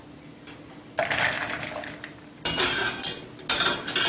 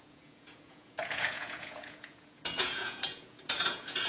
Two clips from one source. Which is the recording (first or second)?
first